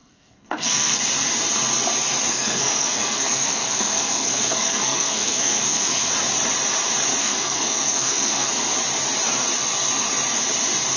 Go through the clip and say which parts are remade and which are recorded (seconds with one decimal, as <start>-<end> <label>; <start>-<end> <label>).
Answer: 0.0-1.0 remade; 1.0-2.3 recorded; 2.3-6.1 remade; 6.1-7.2 recorded; 7.2-8.5 remade; 8.5-11.0 recorded